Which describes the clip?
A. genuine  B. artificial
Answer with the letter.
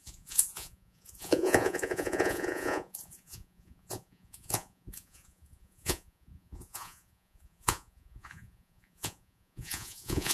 B